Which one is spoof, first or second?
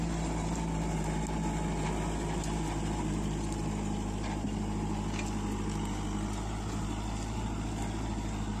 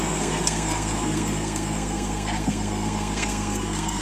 second